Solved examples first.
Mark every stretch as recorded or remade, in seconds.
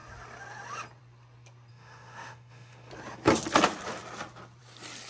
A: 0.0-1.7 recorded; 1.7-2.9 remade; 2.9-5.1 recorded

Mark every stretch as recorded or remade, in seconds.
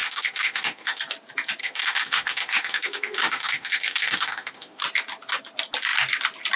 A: 0.0-1.0 remade; 1.0-1.6 recorded; 1.6-4.8 remade; 4.8-6.6 recorded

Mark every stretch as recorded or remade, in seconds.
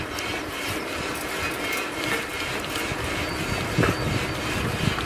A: 0.0-5.1 recorded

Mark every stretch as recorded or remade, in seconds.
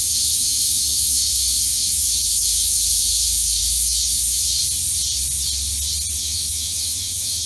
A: 0.0-4.6 remade; 4.6-6.2 recorded; 6.2-7.5 remade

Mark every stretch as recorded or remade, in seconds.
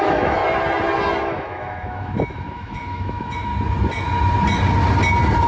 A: 0.0-0.4 remade; 0.4-1.2 recorded; 1.2-3.5 remade; 3.5-5.5 recorded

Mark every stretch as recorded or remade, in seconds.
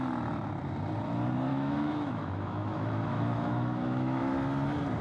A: 0.0-1.5 recorded; 1.5-4.2 remade; 4.2-5.0 recorded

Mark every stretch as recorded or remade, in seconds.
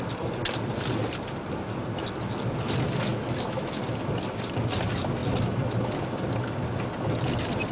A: 0.0-3.1 recorded; 3.1-3.8 remade; 3.8-7.7 recorded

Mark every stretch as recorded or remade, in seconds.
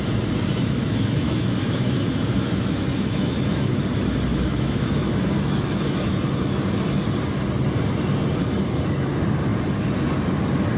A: 0.0-0.5 recorded; 0.5-3.8 remade; 3.8-4.3 recorded; 4.3-6.1 remade; 6.1-10.8 recorded